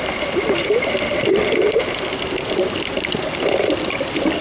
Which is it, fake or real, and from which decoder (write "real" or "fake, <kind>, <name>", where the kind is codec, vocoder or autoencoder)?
real